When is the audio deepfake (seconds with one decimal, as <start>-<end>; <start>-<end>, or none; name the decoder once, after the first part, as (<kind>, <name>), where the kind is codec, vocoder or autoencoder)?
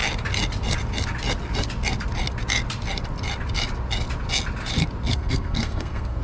5.1-6.2 (codec, SNAC)